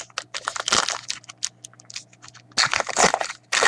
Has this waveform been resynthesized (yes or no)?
no